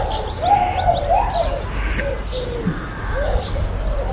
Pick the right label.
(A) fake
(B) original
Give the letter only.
B